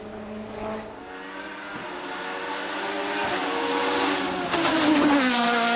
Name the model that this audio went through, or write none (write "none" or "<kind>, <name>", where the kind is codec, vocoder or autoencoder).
none